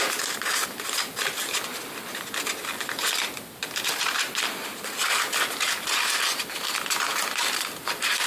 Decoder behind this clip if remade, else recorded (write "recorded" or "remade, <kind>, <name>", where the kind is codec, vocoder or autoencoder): recorded